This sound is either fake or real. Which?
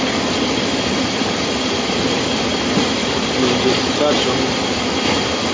fake